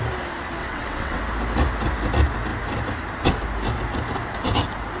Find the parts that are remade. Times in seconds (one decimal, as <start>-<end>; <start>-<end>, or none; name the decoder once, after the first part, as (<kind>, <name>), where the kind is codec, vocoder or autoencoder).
0.6-1.2 (vocoder, WaveNeXt)